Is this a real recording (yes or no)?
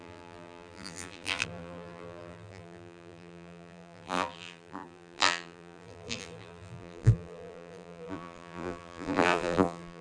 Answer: no